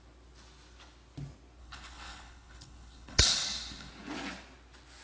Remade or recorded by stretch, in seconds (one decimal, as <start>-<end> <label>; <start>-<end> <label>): 0.0-1.6 recorded; 1.6-3.9 remade; 3.9-5.0 recorded